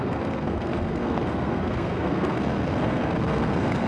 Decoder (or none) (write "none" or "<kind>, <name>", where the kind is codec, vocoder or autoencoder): codec, SNAC